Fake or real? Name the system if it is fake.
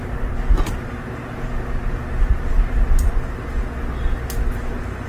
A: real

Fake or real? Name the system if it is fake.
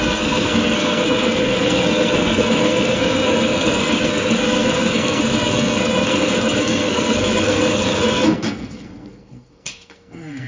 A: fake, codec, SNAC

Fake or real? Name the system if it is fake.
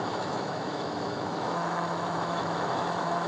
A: fake, autoencoder, DAC-VAE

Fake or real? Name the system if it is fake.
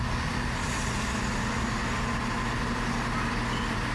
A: real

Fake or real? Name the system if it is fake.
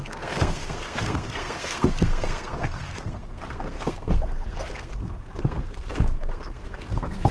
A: fake, codec, SNAC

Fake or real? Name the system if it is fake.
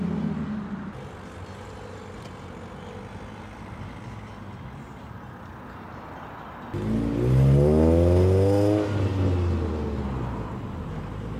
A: real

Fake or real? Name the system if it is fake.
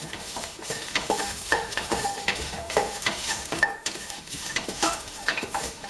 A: fake, autoencoder, DAC-VAE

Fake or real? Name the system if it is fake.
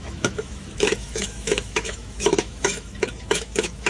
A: fake, autoencoder, DAC-VAE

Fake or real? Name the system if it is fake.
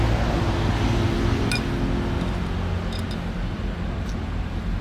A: real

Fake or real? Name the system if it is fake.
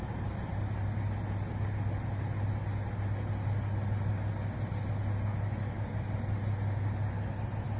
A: real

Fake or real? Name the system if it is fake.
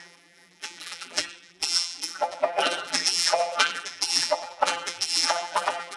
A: fake, vocoder, BigVGAN v2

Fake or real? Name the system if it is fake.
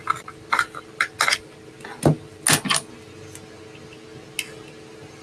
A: real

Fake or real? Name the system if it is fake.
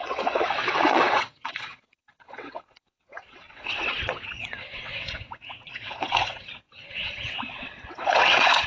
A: fake, vocoder, WaveNeXt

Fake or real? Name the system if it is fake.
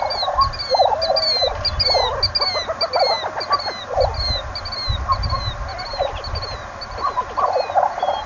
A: real